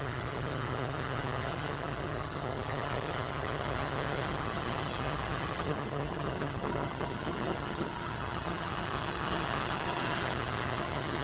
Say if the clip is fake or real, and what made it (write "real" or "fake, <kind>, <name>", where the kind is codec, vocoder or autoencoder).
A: fake, vocoder, HiFi-GAN